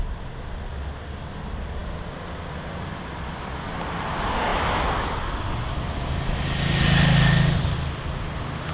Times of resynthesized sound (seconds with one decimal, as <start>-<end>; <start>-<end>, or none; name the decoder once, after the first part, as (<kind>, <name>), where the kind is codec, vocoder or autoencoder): none